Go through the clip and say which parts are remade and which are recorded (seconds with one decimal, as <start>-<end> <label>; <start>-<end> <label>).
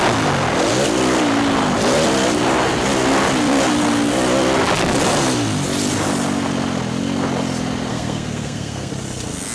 0.0-7.9 recorded; 7.9-8.9 remade; 8.9-9.5 recorded